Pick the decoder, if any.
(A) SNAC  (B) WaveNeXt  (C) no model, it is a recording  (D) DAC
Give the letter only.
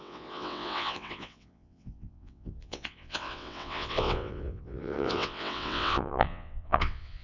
B